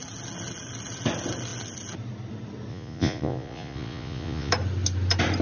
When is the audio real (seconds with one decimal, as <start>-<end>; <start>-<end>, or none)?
0.0-2.7; 4.5-5.4